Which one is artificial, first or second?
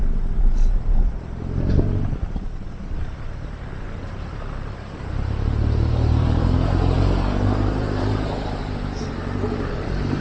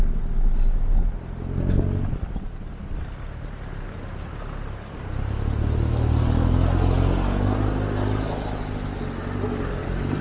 first